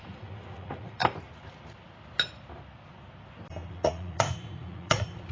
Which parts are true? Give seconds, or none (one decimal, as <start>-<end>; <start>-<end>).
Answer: 1.0-3.7